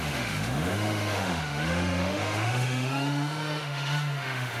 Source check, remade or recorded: remade